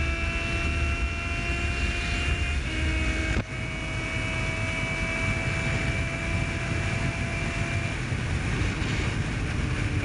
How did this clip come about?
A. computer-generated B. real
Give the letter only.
B